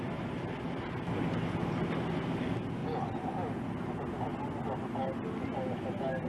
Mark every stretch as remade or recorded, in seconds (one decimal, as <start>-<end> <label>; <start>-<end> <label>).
0.0-6.3 recorded